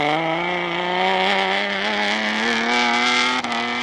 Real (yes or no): yes